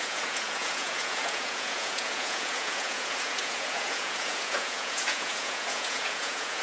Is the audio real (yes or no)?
no